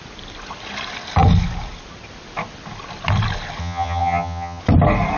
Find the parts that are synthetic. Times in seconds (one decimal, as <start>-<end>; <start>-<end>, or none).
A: 3.6-4.6